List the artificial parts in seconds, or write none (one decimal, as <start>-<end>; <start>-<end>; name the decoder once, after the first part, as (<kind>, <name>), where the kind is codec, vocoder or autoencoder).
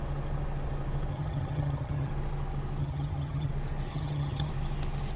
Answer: 1.1-2.1 (vocoder, HiFi-GAN); 2.8-3.5; 3.9-4.5